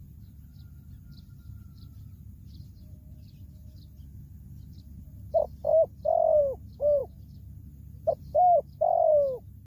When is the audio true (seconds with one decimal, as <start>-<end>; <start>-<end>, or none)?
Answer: 0.0-9.7